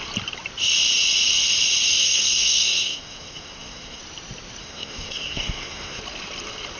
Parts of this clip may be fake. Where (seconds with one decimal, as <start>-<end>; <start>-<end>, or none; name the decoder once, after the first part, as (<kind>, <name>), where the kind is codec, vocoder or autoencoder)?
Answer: 2.0-4.0 (codec, SNAC); 4.6-6.0